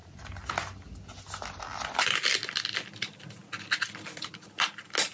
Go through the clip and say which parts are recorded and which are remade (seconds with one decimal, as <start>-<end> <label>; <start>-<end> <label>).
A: 0.0-5.1 recorded